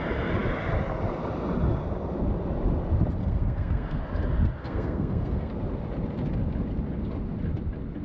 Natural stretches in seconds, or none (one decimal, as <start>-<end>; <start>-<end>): 0.0-3.2; 4.0-4.6; 5.5-8.0